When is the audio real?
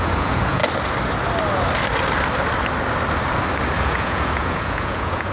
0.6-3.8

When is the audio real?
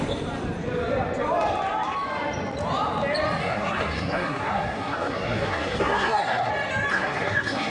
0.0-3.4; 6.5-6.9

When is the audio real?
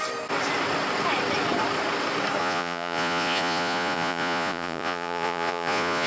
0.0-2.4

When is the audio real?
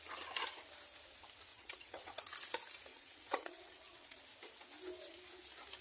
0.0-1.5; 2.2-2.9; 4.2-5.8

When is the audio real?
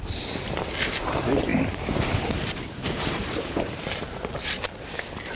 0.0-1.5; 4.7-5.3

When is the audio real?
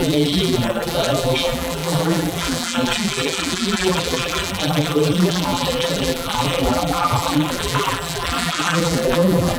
none